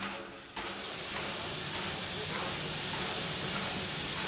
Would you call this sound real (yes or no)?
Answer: yes